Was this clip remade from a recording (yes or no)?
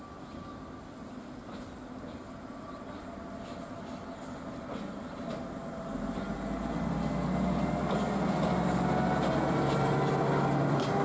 no